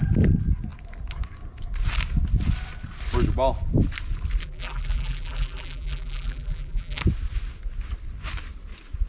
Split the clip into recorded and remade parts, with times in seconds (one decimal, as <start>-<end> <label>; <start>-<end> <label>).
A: 0.0-4.4 recorded; 4.4-7.0 remade; 7.0-9.1 recorded